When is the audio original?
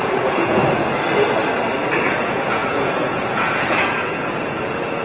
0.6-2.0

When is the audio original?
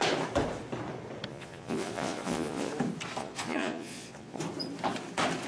0.0-1.3; 2.7-3.2; 4.4-5.5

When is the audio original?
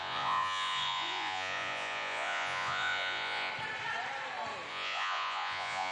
3.5-4.7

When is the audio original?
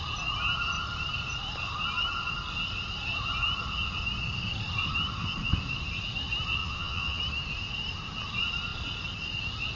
0.0-6.6; 7.2-9.8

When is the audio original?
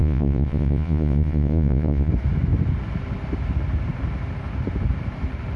2.1-5.6